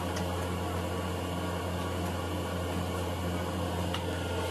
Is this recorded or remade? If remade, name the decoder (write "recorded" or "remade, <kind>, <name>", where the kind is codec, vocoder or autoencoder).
recorded